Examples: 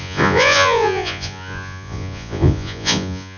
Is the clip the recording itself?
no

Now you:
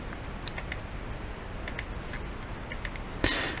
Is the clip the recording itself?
yes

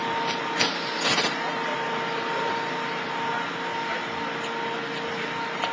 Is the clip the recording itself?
yes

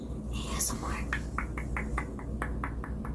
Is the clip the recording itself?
yes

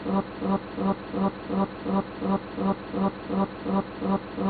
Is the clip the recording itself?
yes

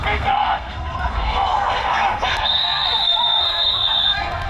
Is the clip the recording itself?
no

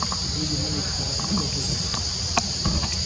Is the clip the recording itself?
yes